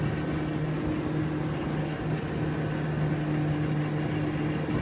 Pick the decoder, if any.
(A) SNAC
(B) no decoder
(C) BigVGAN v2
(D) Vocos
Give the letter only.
B